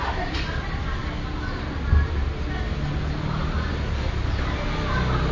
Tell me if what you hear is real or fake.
real